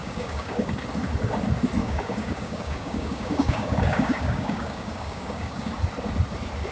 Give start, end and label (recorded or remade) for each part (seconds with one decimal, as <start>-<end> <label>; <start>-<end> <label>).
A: 0.0-0.7 remade; 0.7-1.8 recorded; 1.8-5.8 remade; 5.8-6.7 recorded